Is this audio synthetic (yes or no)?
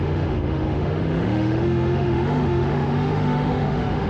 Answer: yes